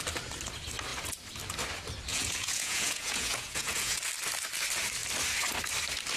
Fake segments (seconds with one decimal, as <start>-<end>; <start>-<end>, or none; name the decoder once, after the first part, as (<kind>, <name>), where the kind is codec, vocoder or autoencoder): 2.1-4.0 (vocoder, Vocos)